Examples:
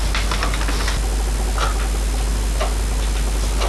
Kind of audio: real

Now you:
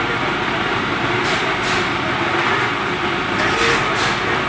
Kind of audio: real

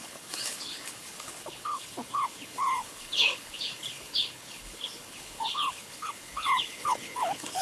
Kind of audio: fake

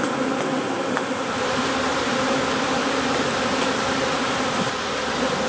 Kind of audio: real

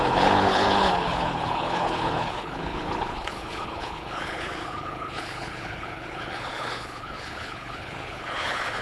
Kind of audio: fake